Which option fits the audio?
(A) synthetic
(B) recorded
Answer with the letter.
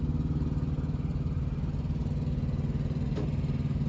B